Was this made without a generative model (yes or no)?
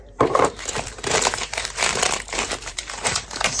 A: no